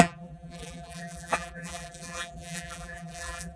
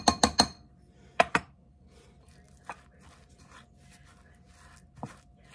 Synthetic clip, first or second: first